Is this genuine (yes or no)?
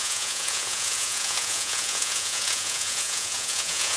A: no